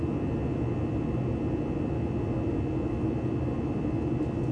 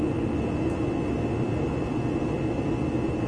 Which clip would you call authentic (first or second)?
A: first